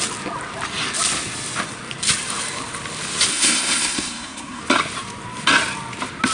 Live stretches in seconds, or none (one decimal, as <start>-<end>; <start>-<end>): 0.0-3.3; 4.6-6.3